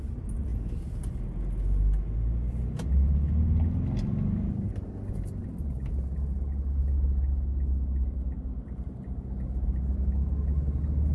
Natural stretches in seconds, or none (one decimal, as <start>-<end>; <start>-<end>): 0.0-11.1